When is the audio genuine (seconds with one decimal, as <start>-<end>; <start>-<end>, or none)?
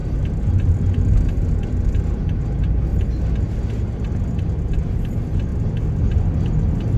0.0-7.0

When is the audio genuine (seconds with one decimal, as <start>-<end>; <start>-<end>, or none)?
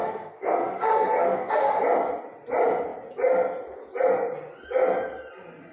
1.8-5.7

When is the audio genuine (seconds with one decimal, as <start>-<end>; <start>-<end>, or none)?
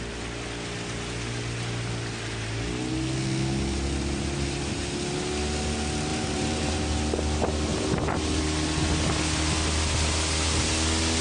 0.0-6.1; 6.8-11.2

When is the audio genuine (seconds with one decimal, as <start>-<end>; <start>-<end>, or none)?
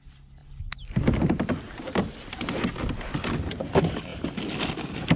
0.0-5.2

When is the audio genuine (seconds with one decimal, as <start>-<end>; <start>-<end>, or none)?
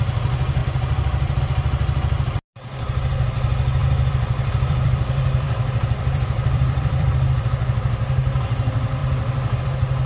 0.0-0.6; 1.4-3.8; 7.1-10.1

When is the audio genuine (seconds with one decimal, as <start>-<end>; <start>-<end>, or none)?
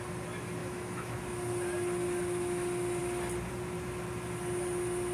0.0-0.6; 1.2-5.1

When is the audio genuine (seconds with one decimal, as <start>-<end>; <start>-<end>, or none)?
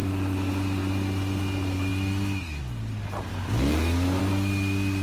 0.0-3.3; 4.2-5.0